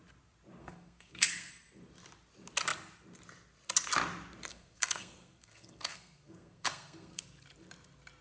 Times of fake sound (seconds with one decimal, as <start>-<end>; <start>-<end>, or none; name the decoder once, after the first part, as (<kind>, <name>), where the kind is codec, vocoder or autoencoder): 0.6-1.5 (codec, SNAC); 4.5-7.2